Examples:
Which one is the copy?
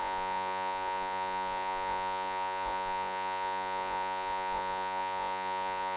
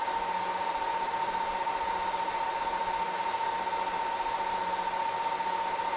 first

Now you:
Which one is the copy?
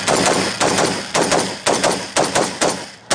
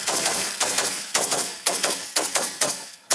second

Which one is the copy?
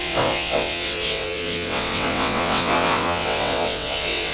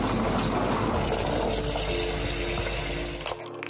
first